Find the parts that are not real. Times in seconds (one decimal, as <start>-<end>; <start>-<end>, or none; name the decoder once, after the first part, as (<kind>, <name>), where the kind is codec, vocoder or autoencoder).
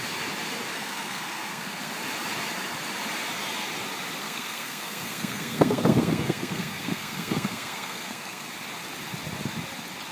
0.7-1.9 (codec, SNAC); 4.2-8.5